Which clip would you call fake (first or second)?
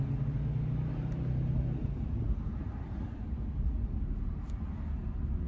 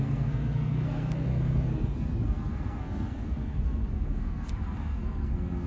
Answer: second